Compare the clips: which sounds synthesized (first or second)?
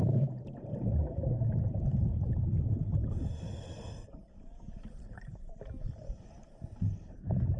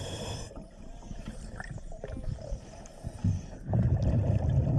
first